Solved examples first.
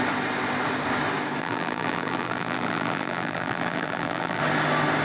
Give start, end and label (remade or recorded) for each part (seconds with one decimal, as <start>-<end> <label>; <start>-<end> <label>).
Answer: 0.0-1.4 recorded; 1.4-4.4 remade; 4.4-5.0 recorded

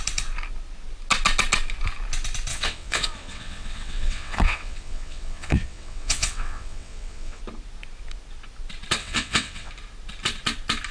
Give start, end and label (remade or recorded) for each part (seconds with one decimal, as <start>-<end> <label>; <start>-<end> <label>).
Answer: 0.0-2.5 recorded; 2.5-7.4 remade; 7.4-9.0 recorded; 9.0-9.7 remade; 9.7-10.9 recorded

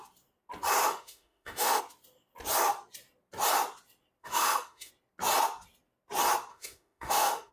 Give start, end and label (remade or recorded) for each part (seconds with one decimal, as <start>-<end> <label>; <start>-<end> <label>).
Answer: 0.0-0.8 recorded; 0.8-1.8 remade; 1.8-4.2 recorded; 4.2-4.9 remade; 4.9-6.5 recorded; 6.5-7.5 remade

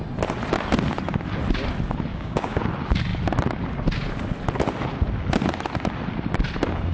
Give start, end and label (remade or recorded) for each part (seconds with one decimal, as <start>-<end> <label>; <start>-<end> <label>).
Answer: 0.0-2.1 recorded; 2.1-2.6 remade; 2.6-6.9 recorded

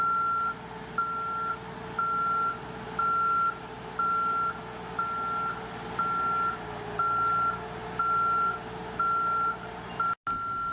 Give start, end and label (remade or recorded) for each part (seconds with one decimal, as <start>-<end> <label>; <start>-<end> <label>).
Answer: 0.0-10.7 recorded